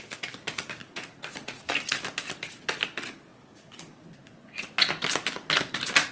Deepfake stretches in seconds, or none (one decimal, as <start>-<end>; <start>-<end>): 0.8-1.6